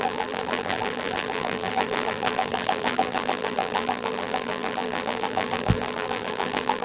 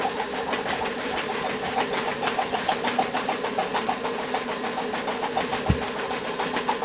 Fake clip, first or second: first